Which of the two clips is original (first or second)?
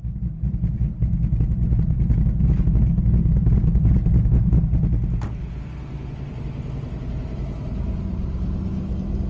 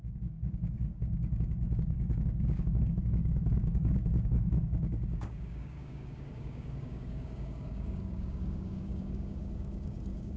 first